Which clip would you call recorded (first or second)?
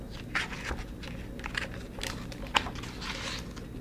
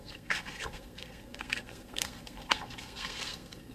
first